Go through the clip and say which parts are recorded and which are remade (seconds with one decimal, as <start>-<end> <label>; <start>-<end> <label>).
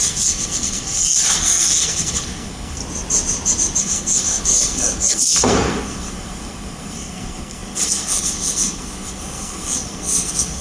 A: 0.0-2.8 remade; 2.8-3.8 recorded; 3.8-10.6 remade